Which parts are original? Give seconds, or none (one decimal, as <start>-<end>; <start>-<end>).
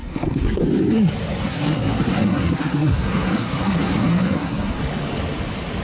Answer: 0.6-1.4; 4.8-5.8